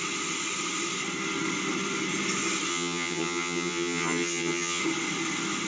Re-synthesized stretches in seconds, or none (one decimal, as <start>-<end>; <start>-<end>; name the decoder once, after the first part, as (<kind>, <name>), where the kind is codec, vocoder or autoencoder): 2.7-4.8 (vocoder, HiFi-GAN)